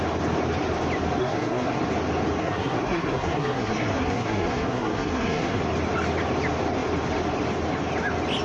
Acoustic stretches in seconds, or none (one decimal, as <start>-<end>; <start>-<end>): 0.0-1.2; 1.8-2.4; 5.6-8.4